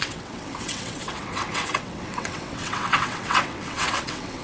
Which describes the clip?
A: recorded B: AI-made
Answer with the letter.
B